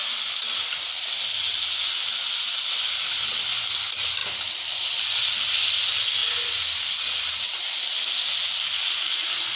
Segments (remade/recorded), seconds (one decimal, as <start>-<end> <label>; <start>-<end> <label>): 0.0-9.6 recorded